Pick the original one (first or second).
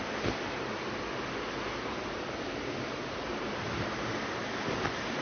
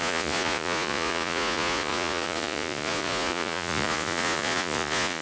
first